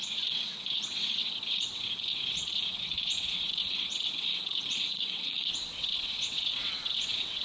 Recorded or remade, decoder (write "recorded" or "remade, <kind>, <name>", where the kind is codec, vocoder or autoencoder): remade, vocoder, WaveNeXt